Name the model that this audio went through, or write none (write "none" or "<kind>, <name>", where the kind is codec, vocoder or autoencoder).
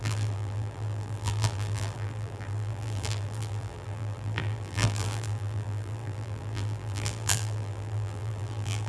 vocoder, BigVGAN v2